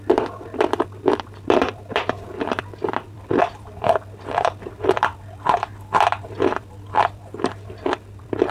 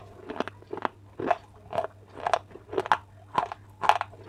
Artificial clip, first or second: first